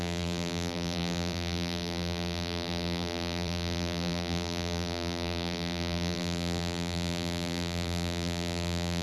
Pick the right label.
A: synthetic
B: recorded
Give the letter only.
A